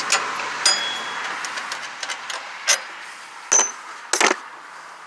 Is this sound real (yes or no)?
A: yes